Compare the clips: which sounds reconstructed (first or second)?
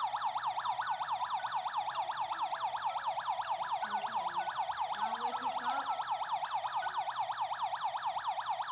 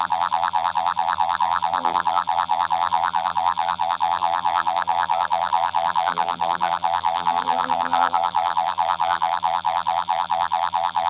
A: second